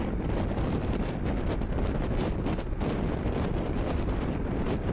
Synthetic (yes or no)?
yes